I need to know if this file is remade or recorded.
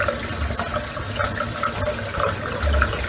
recorded